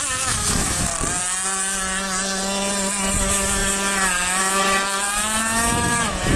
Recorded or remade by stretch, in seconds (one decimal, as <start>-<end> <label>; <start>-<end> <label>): 0.0-0.9 remade; 0.9-3.2 recorded; 3.2-6.4 remade